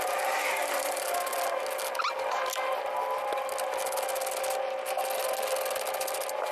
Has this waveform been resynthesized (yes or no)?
no